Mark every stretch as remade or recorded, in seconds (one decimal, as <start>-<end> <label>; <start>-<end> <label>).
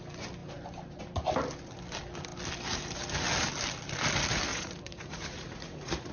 0.0-4.5 recorded; 4.5-6.1 remade